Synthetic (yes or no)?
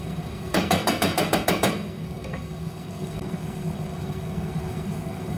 yes